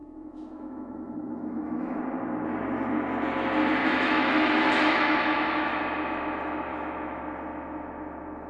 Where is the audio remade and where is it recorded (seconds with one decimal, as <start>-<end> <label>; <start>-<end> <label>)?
0.0-2.0 remade; 2.0-3.8 recorded; 3.8-5.8 remade; 5.8-6.7 recorded; 6.7-7.2 remade; 7.2-8.5 recorded